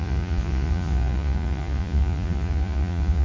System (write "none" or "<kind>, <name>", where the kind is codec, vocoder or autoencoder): vocoder, Vocos